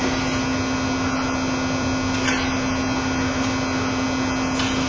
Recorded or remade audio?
recorded